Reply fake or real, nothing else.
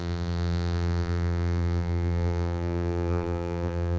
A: fake